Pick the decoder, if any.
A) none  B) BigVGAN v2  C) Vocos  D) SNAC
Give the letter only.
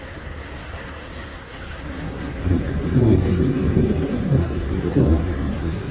D